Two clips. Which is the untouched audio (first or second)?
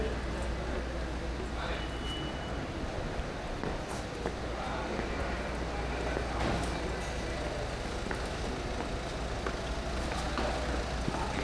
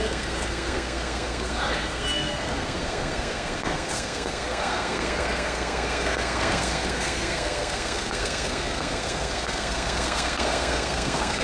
first